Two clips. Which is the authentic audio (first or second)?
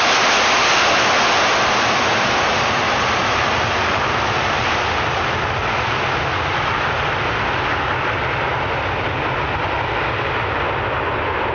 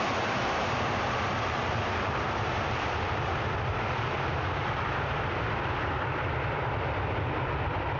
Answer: first